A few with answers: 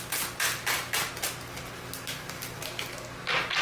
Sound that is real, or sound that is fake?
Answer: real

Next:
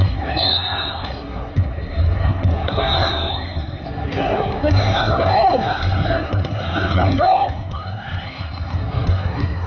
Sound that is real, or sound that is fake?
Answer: fake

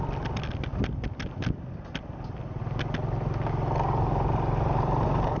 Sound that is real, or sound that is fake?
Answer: real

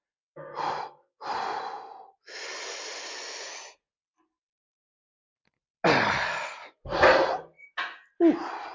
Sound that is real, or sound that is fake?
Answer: real